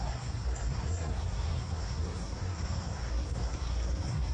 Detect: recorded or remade remade